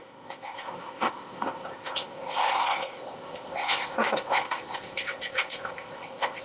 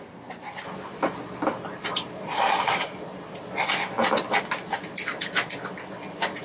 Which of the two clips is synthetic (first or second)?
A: first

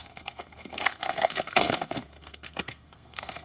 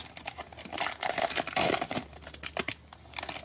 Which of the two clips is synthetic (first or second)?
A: first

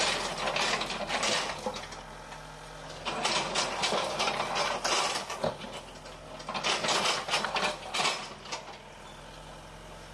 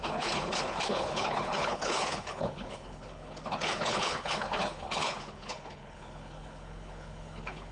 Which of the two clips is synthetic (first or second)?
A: second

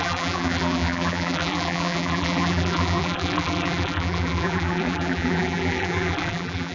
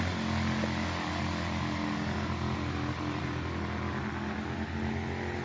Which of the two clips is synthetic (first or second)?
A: first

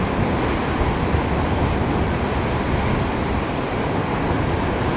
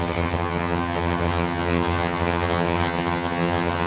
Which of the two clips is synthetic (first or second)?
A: second